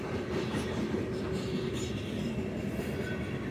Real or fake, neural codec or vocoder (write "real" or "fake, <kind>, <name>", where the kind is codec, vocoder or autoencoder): real